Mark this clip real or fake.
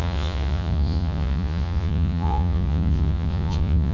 fake